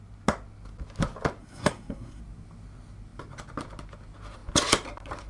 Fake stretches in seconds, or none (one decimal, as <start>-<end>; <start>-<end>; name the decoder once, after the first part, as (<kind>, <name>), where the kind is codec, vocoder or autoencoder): 1.4-2.2 (codec, SNAC)

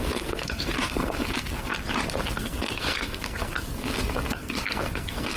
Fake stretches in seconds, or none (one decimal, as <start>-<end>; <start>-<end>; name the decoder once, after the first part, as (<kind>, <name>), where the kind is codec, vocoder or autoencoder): 0.0-1.7 (codec, SNAC); 2.2-5.4

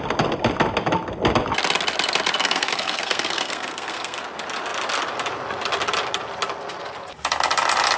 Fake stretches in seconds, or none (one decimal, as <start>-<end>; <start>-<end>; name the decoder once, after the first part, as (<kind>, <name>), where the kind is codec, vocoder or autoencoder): 2.4-4.2 (codec, SNAC)

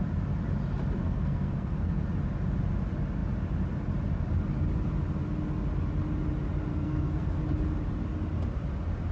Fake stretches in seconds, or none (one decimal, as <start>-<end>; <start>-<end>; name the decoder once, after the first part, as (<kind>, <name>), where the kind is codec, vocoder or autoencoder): 1.0-2.1 (codec, SNAC); 6.7-7.4

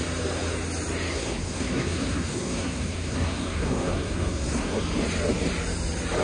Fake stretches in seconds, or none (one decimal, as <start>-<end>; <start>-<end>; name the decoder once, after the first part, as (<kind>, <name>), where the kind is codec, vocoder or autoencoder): 1.1-4.8 (codec, SNAC)